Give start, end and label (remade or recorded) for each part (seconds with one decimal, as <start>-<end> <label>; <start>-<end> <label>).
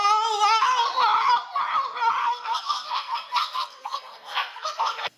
0.0-2.2 recorded; 2.2-5.2 remade